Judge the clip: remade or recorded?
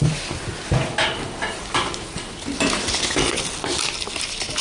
recorded